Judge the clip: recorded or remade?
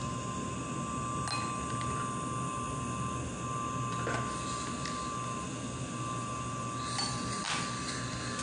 recorded